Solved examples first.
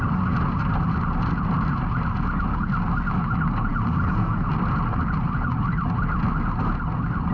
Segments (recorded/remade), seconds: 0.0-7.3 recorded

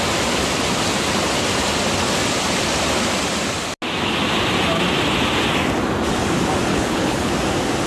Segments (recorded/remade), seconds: 0.0-6.7 recorded; 6.7-7.3 remade; 7.3-7.9 recorded

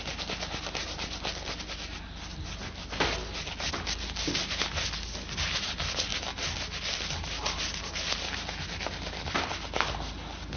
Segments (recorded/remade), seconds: 0.0-10.6 recorded

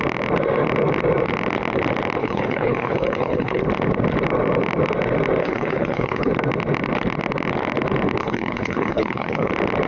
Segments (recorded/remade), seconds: 0.0-2.2 recorded; 2.2-3.6 remade; 3.6-5.4 recorded; 5.4-6.3 remade; 6.3-8.2 recorded; 8.2-9.5 remade; 9.5-9.9 recorded